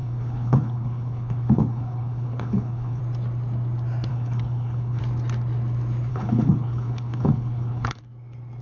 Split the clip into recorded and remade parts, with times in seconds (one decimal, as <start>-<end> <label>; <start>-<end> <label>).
0.0-3.0 remade; 3.0-4.1 recorded; 4.1-5.0 remade; 5.0-6.1 recorded; 6.1-8.0 remade; 8.0-8.6 recorded

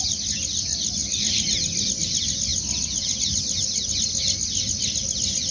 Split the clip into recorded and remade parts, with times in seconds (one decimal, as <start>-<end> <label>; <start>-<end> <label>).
0.0-5.5 recorded

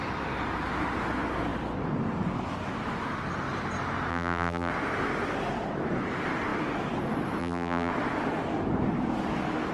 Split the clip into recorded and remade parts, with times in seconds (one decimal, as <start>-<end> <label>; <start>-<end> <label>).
0.0-4.1 recorded; 4.1-4.7 remade; 4.7-7.4 recorded; 7.4-7.9 remade; 7.9-9.7 recorded

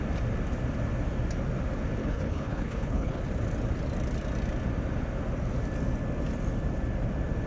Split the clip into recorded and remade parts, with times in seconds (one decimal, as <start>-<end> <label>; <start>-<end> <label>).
0.0-2.0 recorded; 2.0-3.2 remade; 3.2-7.5 recorded

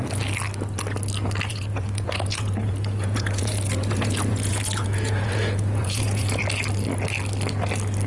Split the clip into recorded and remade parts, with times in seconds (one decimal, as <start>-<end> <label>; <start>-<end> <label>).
0.0-1.5 recorded; 1.5-6.4 remade; 6.4-8.1 recorded